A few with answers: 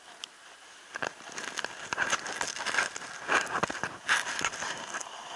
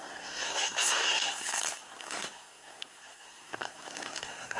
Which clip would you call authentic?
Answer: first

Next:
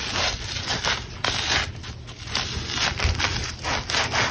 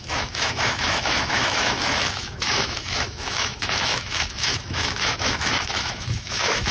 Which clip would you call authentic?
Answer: first